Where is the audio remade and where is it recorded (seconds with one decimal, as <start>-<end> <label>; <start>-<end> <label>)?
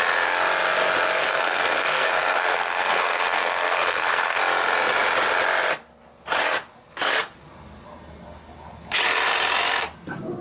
0.0-1.2 recorded; 1.2-4.4 remade; 4.4-10.4 recorded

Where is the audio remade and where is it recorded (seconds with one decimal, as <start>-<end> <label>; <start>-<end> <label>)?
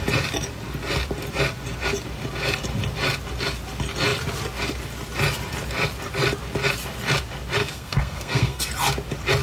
0.0-7.6 recorded; 7.6-8.7 remade; 8.7-9.4 recorded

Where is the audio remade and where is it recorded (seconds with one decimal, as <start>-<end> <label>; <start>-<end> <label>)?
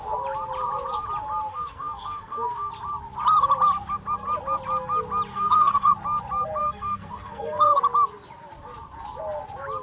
0.0-1.5 recorded; 1.5-2.7 remade; 2.7-5.3 recorded; 5.3-5.9 remade; 5.9-6.6 recorded; 6.6-7.8 remade; 7.8-9.8 recorded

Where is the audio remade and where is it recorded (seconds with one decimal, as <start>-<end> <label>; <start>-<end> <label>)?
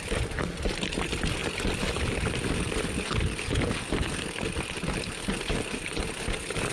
0.0-6.7 recorded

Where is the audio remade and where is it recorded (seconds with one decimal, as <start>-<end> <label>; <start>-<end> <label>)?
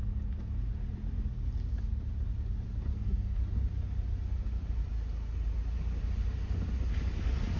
0.0-2.9 recorded; 2.9-3.4 remade; 3.4-7.6 recorded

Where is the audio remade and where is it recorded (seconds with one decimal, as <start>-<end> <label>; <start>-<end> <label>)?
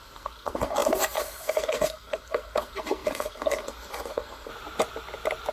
0.0-4.5 remade; 4.5-5.5 recorded